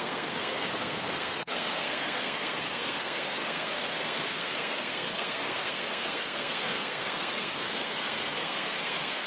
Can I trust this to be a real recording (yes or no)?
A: no